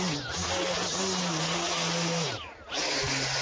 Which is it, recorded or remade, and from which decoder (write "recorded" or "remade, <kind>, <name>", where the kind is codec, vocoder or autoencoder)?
recorded